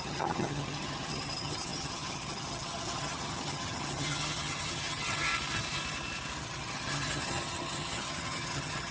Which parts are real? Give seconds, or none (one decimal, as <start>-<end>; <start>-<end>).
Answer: 5.3-6.4